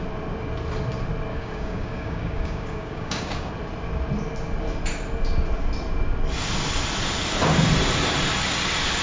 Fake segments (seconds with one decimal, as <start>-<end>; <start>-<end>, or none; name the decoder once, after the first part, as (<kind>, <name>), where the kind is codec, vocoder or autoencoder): 1.3-3.5 (codec, DAC)